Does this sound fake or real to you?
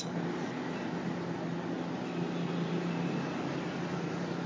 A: real